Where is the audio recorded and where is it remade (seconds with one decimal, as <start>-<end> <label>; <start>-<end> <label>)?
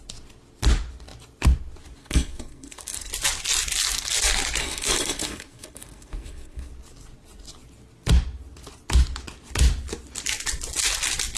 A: 0.0-2.0 recorded; 2.0-3.1 remade; 3.1-4.6 recorded; 4.6-6.7 remade; 6.7-11.4 recorded